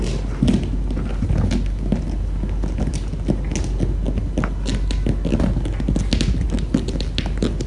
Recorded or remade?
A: recorded